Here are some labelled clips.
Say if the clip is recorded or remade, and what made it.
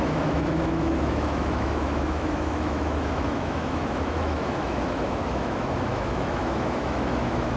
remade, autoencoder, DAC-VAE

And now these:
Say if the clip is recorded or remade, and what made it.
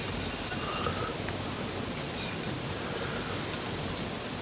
recorded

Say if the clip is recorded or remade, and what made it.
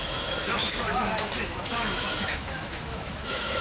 remade, autoencoder, DAC-VAE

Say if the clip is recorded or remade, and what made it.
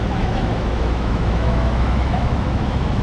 remade, autoencoder, DAC-VAE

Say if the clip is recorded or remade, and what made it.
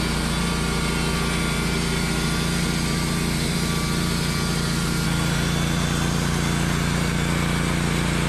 recorded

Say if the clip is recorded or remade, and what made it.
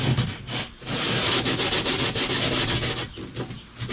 recorded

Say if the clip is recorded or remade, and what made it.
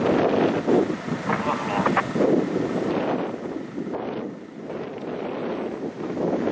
recorded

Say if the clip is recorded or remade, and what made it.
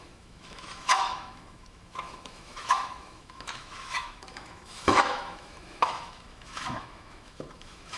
remade, autoencoder, DAC-VAE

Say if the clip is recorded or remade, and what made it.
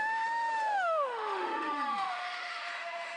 remade, autoencoder, DAC-VAE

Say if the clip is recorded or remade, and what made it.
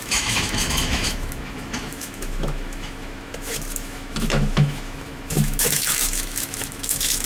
remade, autoencoder, DAC-VAE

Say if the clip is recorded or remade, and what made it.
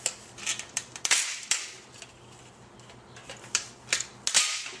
recorded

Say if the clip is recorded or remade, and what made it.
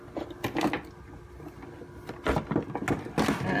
recorded